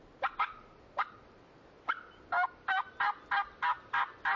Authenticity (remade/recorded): recorded